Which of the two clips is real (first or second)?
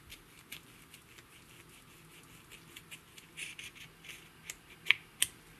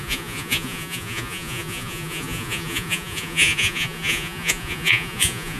first